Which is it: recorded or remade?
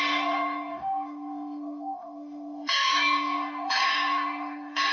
remade